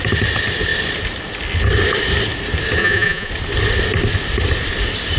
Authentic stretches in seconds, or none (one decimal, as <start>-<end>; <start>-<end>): 0.0-2.8; 3.3-5.2

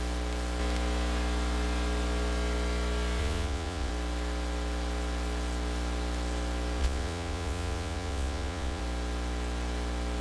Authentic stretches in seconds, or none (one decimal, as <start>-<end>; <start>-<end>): 0.0-3.2; 3.9-6.8; 8.8-10.2

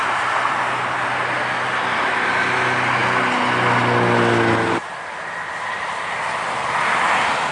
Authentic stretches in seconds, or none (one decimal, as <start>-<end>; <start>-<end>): 0.0-7.5

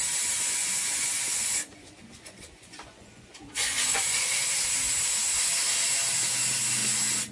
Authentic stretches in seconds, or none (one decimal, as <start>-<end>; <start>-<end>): 0.0-0.6; 4.3-7.3

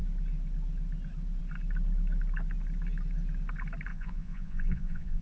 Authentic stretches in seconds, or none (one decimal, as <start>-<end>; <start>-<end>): 0.0-3.9